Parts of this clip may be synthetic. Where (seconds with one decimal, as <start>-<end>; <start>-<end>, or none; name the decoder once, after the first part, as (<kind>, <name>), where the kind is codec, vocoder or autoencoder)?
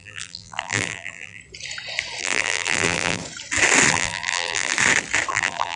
0.0-1.4 (vocoder, BigVGAN v2); 2.2-3.2; 3.9-4.7; 5.3-5.8